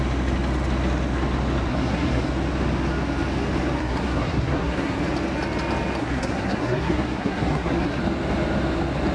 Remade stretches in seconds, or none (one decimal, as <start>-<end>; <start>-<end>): 1.7-2.3; 3.8-5.0; 6.0-8.0